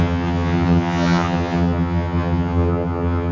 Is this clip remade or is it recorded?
remade